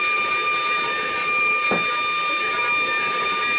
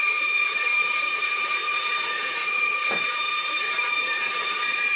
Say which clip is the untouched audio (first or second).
first